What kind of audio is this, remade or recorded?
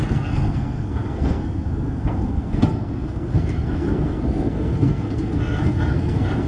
remade